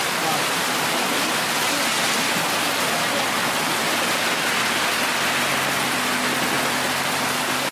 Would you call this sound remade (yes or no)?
no